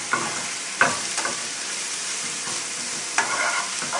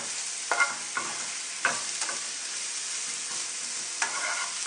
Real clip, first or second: second